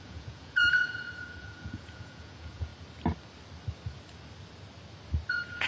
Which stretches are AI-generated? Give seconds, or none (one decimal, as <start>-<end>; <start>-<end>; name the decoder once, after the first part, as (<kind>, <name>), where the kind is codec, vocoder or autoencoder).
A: 0.0-2.7 (vocoder, Vocos); 5.3-5.7